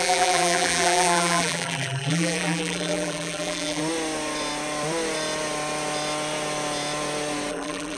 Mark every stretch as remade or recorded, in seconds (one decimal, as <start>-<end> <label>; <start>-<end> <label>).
0.0-3.8 remade; 3.8-7.5 recorded; 7.5-8.0 remade